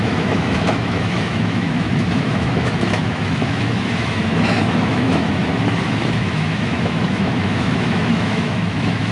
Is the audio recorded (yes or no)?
no